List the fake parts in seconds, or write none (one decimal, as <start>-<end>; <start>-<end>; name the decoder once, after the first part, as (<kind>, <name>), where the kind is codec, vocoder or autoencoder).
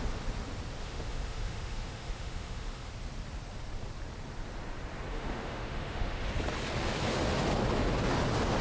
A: 0.8-2.9 (autoencoder, DAC-VAE); 5.1-6.3